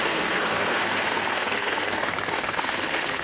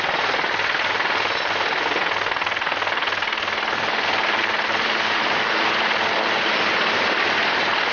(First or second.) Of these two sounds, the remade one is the first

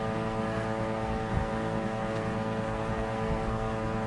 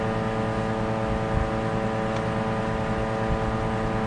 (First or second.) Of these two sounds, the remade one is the first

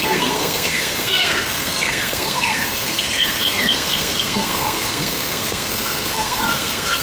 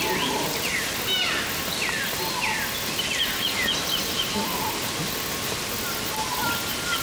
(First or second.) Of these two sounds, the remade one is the first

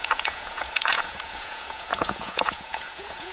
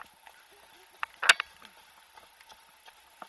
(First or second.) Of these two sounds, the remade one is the first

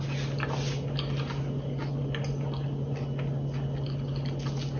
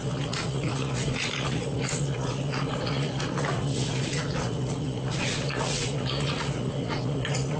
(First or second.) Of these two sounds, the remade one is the second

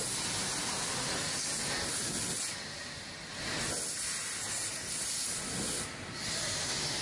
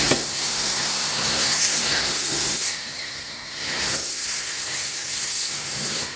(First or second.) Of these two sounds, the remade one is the second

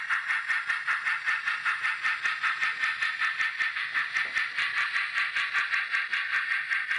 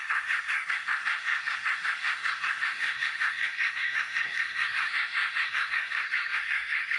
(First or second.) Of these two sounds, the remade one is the second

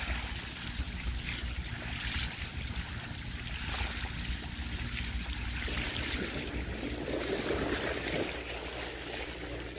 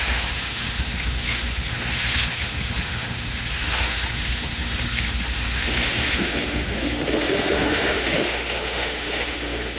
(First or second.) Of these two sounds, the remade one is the second